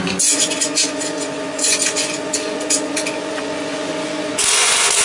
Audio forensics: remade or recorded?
remade